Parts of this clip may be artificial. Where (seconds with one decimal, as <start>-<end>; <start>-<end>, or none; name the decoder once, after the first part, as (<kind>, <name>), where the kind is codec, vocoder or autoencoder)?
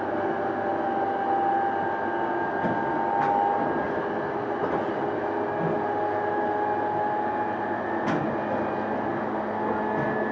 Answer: none